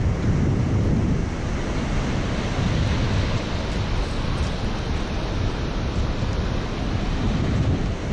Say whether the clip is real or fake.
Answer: real